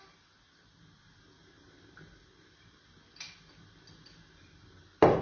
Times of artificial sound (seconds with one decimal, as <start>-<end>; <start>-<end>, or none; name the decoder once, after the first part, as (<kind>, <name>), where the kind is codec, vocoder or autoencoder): none